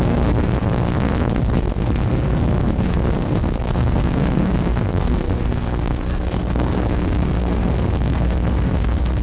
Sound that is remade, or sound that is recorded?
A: remade